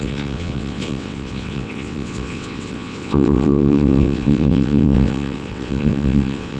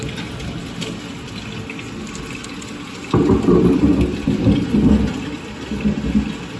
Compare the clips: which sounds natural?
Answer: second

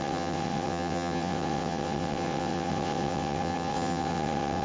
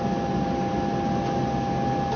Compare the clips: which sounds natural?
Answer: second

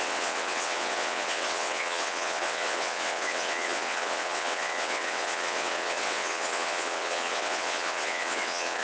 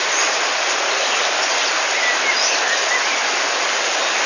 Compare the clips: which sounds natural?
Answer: second